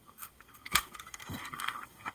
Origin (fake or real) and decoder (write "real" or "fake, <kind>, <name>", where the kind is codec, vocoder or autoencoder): fake, codec, SNAC